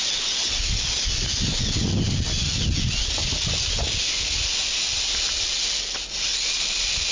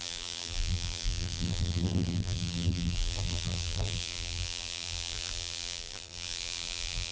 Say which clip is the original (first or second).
first